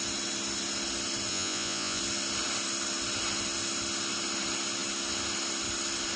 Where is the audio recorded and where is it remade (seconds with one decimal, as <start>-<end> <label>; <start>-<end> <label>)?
0.0-1.3 recorded; 1.3-2.0 remade; 2.0-6.2 recorded